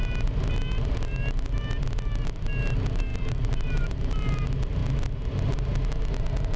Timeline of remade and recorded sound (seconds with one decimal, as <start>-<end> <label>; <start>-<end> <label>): 0.0-3.1 recorded; 3.1-3.9 remade; 3.9-6.6 recorded